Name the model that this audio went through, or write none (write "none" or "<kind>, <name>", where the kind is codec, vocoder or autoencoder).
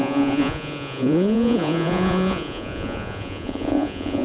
vocoder, Vocos